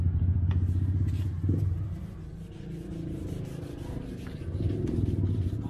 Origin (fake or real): real